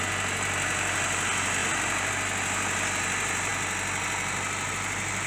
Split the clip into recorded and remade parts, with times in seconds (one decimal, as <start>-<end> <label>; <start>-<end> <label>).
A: 0.0-5.3 recorded